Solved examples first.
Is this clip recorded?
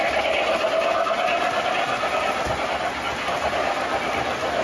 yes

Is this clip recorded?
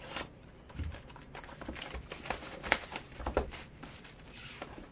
no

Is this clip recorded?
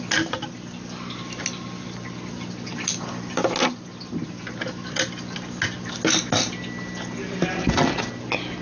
yes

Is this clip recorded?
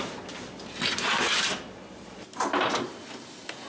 yes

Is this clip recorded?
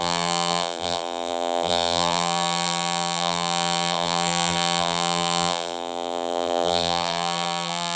no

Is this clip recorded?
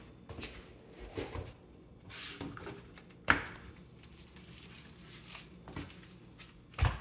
yes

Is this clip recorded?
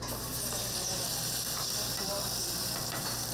no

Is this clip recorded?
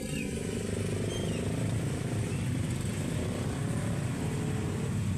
yes